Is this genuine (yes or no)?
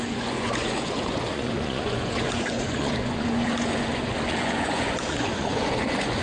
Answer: no